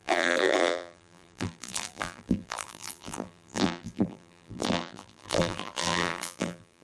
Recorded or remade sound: remade